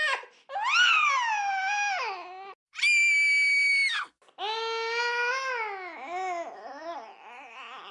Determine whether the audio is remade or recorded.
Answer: recorded